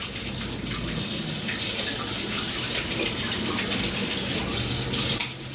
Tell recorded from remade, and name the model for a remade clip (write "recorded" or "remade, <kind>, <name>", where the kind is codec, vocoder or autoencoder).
recorded